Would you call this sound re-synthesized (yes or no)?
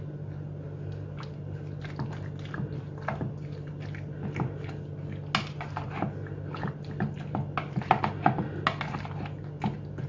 no